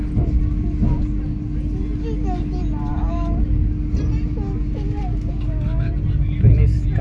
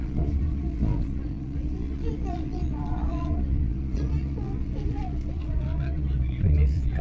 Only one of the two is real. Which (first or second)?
first